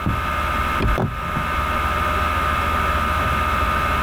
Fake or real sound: real